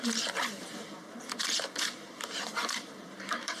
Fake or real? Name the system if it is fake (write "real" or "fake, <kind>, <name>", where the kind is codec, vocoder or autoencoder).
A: fake, vocoder, BigVGAN v2